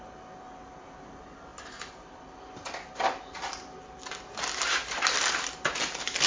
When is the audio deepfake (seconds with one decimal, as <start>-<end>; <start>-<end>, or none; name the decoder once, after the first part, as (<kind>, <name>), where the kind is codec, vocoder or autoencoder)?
1.5-2.0 (vocoder, BigVGAN v2)